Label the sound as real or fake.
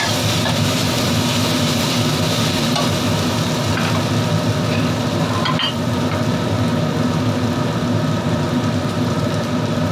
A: real